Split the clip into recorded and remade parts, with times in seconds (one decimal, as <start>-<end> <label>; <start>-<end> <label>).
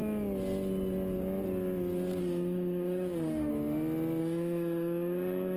0.0-2.2 recorded; 2.2-3.5 remade; 3.5-4.2 recorded; 4.2-5.6 remade